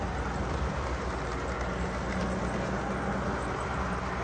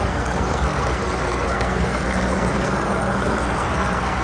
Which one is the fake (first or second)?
second